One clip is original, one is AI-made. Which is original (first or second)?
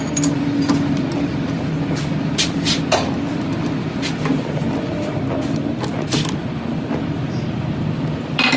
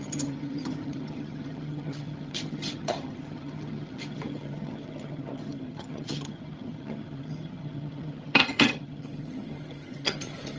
first